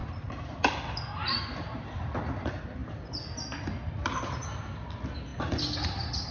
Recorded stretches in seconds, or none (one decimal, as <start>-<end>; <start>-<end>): 0.6-1.2; 2.1-6.3